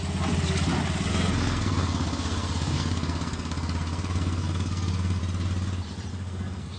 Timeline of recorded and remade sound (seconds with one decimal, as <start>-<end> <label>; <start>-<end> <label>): 0.0-1.1 recorded; 1.1-5.2 remade; 5.2-6.1 recorded; 6.1-6.8 remade